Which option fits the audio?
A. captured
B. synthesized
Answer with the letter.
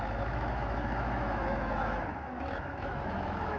B